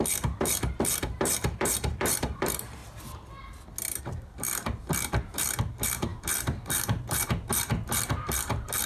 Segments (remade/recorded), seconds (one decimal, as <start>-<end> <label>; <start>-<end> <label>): 0.0-2.8 remade; 2.8-4.0 recorded; 4.0-8.9 remade